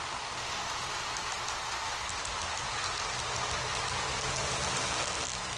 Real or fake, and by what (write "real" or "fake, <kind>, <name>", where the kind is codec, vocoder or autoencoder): real